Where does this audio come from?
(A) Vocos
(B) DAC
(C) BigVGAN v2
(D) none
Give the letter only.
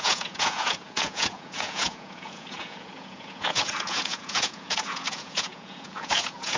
A